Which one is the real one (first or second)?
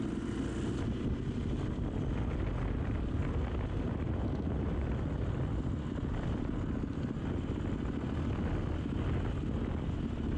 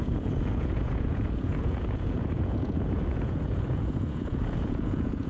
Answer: first